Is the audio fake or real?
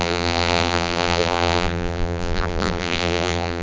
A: fake